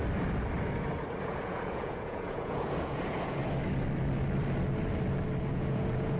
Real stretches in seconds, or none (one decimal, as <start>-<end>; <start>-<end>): 0.0-1.2; 3.4-5.5